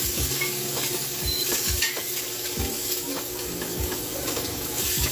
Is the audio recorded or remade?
remade